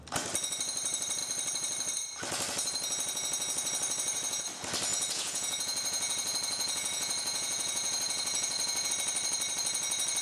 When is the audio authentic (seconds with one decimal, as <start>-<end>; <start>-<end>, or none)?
0.0-4.9; 8.9-10.2